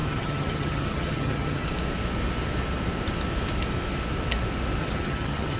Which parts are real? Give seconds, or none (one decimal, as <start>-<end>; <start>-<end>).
1.7-4.8